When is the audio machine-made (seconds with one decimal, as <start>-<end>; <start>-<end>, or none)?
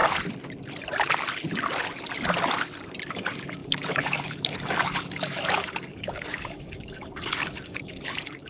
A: 3.1-8.5